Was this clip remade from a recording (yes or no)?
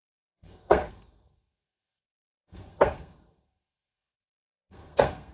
yes